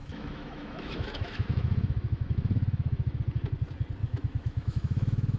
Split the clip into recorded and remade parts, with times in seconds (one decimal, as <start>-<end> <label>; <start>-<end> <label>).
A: 0.0-3.2 remade; 3.2-4.0 recorded; 4.0-5.4 remade